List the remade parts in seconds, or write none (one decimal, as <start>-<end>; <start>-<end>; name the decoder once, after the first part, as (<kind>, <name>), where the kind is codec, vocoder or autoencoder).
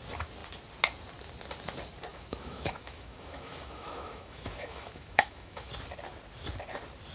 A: 2.1-5.7 (autoencoder, DAC-VAE)